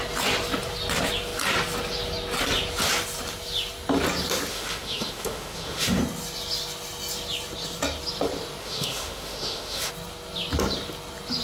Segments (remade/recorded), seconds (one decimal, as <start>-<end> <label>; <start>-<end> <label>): 0.0-4.5 recorded; 4.5-6.0 remade; 6.0-8.6 recorded; 8.6-9.9 remade; 9.9-11.4 recorded